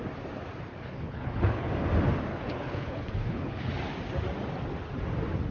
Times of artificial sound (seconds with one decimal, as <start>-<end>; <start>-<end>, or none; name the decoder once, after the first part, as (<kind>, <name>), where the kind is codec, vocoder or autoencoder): 0.7-1.7 (codec, HILCodec); 2.3-3.7